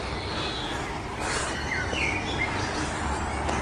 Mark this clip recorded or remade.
recorded